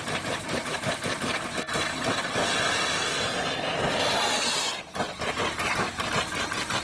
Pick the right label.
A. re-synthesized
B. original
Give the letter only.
B